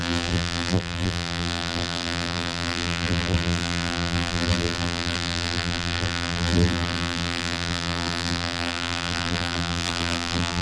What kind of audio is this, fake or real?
fake